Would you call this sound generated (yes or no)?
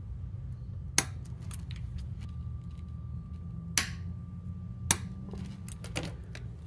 no